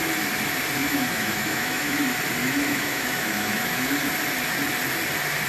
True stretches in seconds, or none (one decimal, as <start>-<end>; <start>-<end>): 0.0-0.8; 2.0-2.4; 3.9-5.5